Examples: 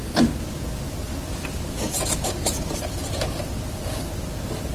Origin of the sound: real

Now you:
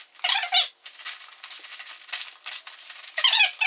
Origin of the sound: real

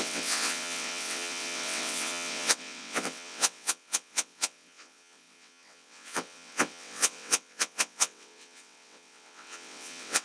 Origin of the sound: fake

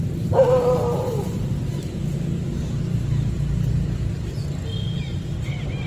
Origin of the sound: real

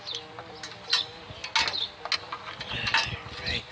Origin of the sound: real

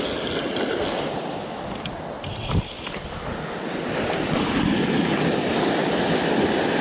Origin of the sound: real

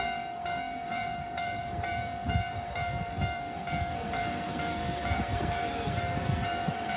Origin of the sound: fake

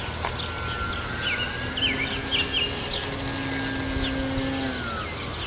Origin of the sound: real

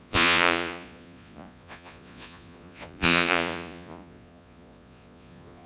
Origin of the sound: fake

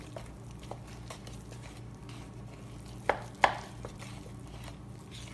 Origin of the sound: real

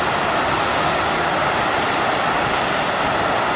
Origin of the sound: real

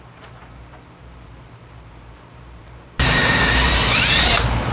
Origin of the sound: fake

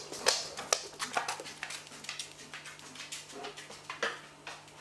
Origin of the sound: real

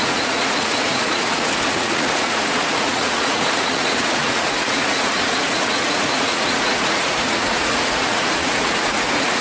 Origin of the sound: fake